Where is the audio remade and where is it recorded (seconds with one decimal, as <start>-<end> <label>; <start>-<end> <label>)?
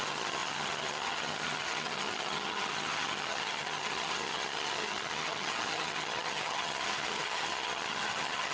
0.0-8.5 remade